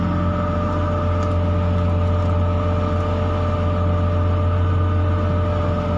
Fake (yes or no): no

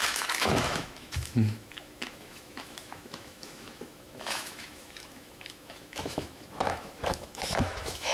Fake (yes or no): yes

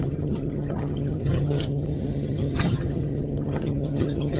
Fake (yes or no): yes